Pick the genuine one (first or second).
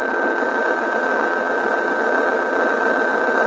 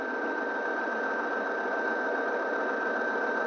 second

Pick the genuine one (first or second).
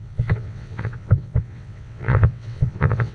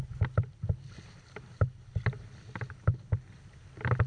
second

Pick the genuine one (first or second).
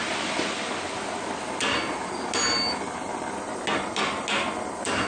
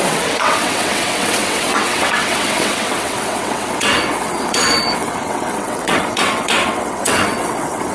first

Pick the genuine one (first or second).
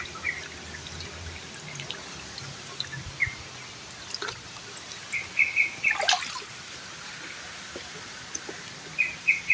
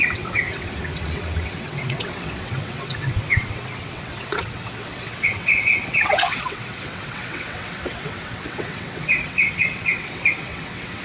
first